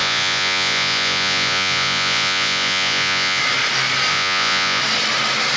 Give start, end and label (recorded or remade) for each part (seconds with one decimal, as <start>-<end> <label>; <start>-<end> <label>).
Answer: 0.0-3.4 remade; 3.4-4.1 recorded; 4.1-4.8 remade; 4.8-5.6 recorded